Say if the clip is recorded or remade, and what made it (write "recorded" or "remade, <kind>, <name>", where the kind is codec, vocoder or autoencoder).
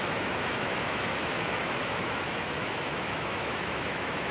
remade, autoencoder, DAC-VAE